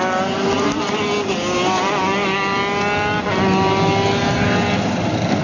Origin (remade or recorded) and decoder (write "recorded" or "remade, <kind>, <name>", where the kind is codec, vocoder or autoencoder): recorded